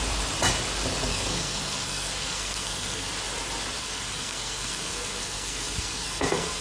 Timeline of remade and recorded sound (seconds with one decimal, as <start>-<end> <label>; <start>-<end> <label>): 0.0-1.1 recorded; 1.1-3.1 remade; 3.1-3.8 recorded; 3.8-6.6 remade

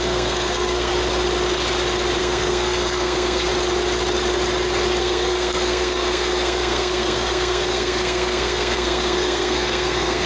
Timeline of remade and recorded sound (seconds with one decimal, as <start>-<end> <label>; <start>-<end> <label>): 0.0-0.9 remade; 0.9-2.2 recorded; 2.2-3.5 remade; 3.5-5.0 recorded; 5.0-10.3 remade

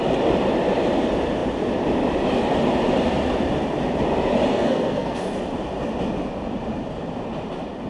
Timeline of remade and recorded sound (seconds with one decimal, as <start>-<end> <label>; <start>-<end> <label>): 0.0-4.5 recorded; 4.5-5.3 remade; 5.3-7.9 recorded

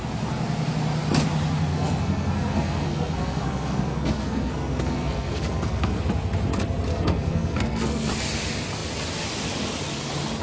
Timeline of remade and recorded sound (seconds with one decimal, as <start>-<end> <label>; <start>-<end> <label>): 0.0-1.7 recorded; 1.7-6.0 remade; 6.0-6.9 recorded; 6.9-8.1 remade; 8.1-10.4 recorded

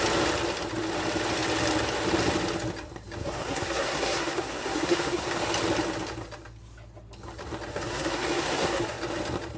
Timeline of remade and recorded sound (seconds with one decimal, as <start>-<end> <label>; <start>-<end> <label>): 0.0-3.2 recorded; 3.2-5.4 remade; 5.4-7.7 recorded; 7.7-9.0 remade; 9.0-9.6 recorded

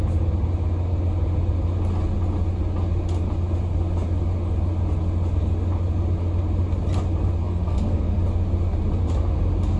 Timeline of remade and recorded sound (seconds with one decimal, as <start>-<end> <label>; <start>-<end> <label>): 0.0-7.4 recorded; 7.4-8.2 remade; 8.2-9.8 recorded